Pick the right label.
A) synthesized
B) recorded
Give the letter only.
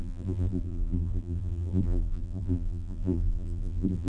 A